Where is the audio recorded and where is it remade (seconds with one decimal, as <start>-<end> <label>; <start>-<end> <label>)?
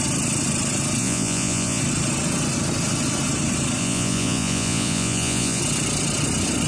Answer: 0.0-1.0 recorded; 1.0-1.8 remade; 1.8-3.8 recorded; 3.8-5.6 remade; 5.6-6.7 recorded